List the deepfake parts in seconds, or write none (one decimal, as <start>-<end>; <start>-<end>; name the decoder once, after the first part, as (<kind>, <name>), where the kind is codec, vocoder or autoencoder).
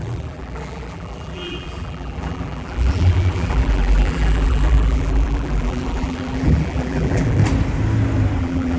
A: 0.0-7.4 (vocoder, BigVGAN v2); 8.4-8.8